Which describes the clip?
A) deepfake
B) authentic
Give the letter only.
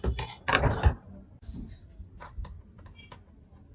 B